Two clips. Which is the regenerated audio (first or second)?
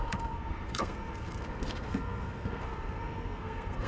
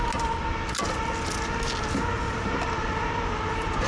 first